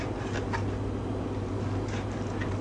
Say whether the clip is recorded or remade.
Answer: recorded